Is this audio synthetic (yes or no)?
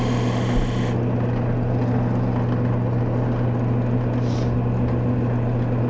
no